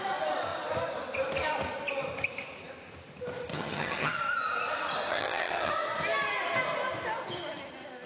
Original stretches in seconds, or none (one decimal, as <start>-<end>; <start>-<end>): 0.0-3.5; 4.2-5.1; 5.7-8.1